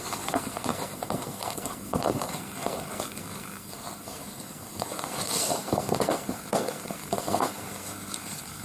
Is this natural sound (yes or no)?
no